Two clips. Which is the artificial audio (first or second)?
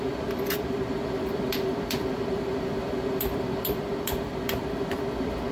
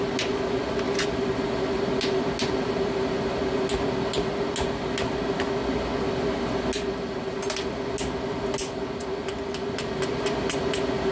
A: first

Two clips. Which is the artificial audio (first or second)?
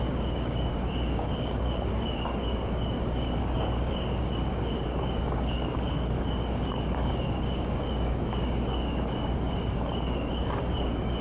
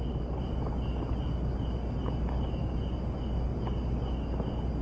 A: first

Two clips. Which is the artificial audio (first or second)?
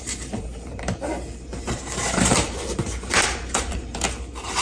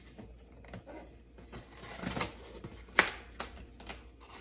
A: first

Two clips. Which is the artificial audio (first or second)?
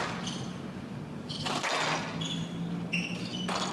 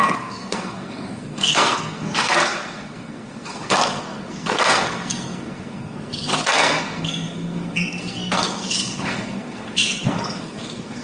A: second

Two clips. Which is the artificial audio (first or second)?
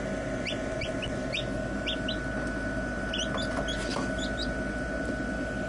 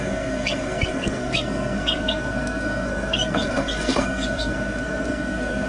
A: second